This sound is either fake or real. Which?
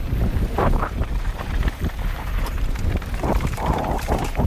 fake